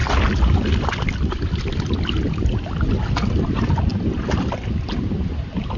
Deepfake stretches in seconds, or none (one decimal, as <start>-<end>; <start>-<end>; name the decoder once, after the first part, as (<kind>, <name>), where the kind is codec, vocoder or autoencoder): none

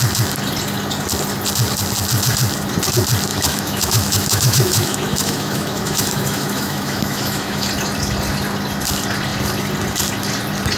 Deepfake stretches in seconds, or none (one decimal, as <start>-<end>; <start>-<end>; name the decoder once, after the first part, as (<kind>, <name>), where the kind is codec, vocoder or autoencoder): 3.3-7.7 (autoencoder, DAC-VAE)

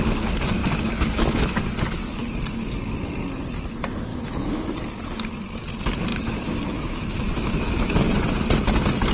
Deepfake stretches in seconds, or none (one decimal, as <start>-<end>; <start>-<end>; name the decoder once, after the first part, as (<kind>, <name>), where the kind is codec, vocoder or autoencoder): 0.6-1.6 (autoencoder, DAC-VAE); 4.1-4.7; 6.1-8.2